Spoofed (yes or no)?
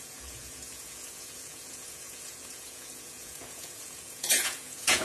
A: yes